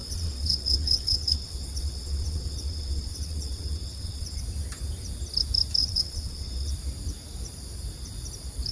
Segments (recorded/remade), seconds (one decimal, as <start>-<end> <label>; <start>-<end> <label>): 0.0-4.4 remade; 4.4-5.8 recorded; 5.8-6.7 remade; 6.7-8.7 recorded